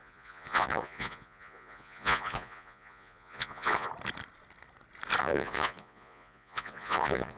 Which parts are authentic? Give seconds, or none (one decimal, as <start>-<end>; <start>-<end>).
3.9-5.2